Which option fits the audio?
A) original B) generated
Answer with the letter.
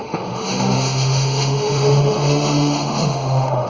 B